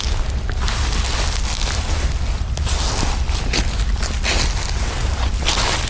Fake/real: real